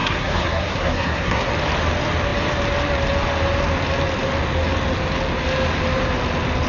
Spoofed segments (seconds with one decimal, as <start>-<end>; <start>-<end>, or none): 0.0-1.5